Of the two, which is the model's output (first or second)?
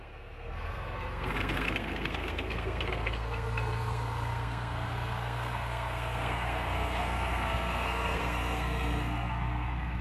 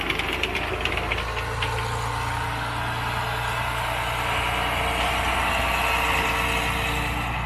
first